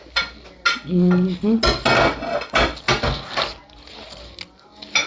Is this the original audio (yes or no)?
yes